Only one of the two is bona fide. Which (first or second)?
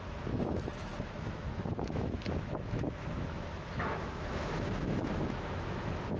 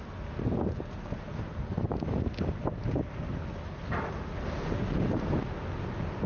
second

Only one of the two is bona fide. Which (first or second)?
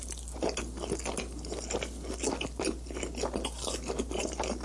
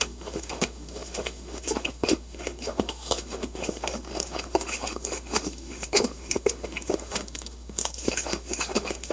first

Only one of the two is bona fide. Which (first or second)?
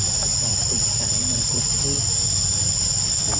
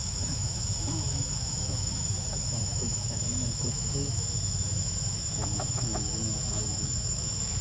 first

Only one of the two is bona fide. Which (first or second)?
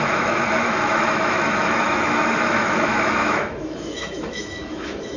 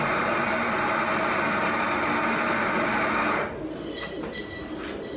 second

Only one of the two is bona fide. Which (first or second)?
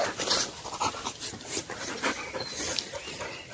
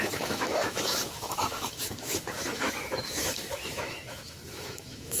first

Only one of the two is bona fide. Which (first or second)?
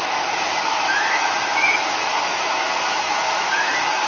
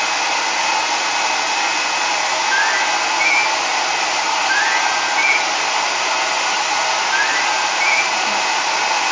second